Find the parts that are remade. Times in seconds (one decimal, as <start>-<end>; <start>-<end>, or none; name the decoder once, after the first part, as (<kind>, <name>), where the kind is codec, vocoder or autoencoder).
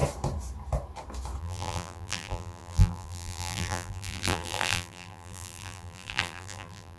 1.4-7.0 (vocoder, BigVGAN v2)